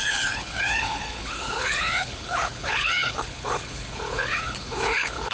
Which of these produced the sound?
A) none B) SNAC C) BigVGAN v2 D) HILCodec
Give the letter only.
D